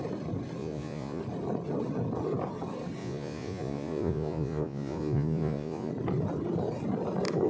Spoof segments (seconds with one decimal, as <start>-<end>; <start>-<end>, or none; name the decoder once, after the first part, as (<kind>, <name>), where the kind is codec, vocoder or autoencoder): 0.6-1.2 (vocoder, Vocos); 3.0-5.9